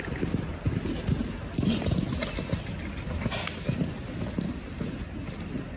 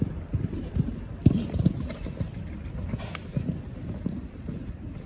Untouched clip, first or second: first